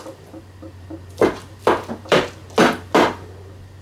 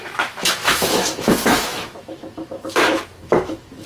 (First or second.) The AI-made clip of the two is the second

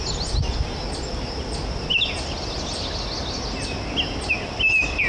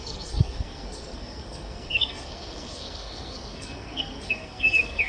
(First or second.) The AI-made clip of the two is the second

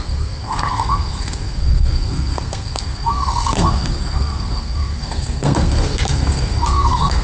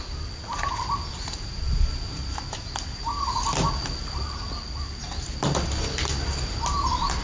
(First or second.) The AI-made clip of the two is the first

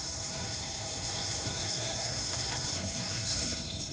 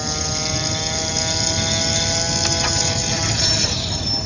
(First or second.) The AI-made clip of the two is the first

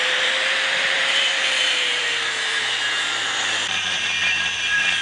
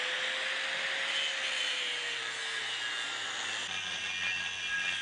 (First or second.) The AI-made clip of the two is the first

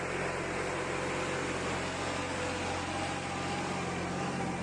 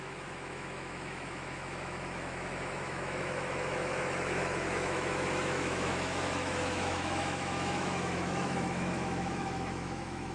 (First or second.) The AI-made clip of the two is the second